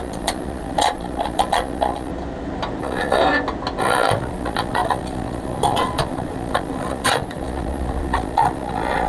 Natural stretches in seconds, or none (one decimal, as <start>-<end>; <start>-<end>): 2.1-2.8; 3.2-3.8